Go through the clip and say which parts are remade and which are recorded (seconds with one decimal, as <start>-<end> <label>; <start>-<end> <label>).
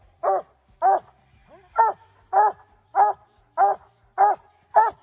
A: 0.0-5.0 recorded